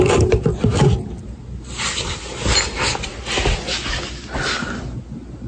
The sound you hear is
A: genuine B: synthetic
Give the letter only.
A